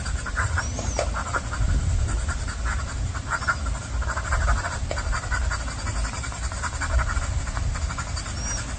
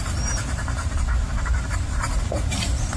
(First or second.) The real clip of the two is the first